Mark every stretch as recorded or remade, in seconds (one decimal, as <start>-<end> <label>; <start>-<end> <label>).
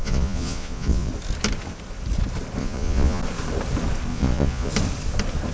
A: 0.0-1.1 remade; 1.1-2.6 recorded; 2.6-3.2 remade; 3.2-4.1 recorded; 4.1-4.7 remade; 4.7-5.5 recorded